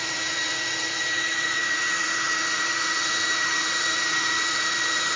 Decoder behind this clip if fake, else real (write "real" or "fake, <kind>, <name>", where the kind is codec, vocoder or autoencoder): fake, vocoder, Vocos